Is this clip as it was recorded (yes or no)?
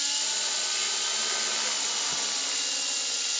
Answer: yes